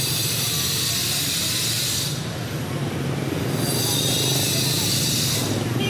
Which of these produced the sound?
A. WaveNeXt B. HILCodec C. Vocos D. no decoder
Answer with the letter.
D